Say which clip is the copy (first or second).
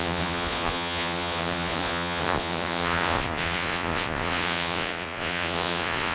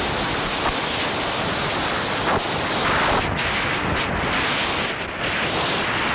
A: first